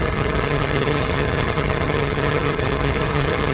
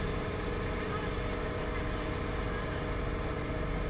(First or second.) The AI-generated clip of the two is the first